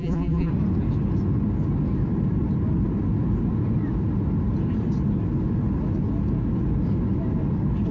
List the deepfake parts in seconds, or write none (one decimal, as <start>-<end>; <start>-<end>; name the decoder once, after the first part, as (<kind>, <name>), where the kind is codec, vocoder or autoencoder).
0.0-0.5 (vocoder, BigVGAN v2)

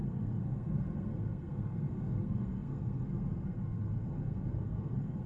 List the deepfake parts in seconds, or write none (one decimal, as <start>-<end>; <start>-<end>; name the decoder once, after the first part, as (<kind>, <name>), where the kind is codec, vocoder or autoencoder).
0.0-5.3 (codec, SNAC)

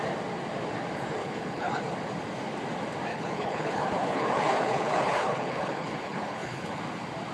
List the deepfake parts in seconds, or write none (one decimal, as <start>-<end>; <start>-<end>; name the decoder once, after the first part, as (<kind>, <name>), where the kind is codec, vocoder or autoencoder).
1.2-1.8 (codec, HILCodec); 3.1-6.8

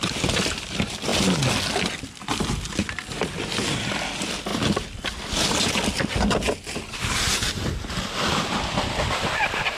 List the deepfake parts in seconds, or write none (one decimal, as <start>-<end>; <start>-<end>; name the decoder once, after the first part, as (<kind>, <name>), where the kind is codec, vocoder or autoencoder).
none

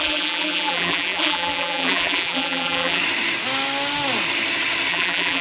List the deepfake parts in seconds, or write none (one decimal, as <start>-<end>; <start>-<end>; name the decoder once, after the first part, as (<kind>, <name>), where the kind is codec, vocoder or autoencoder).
0.0-3.0 (vocoder, BigVGAN v2); 4.9-5.4

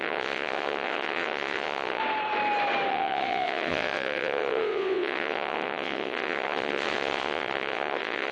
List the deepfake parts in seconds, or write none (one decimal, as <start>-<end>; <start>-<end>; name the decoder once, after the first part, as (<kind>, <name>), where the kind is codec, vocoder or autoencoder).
0.0-2.0 (vocoder, WaveNeXt); 2.9-8.3

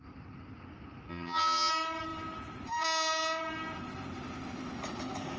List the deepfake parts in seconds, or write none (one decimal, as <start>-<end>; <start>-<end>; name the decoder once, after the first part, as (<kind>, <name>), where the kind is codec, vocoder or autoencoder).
1.1-1.7 (vocoder, HiFi-GAN)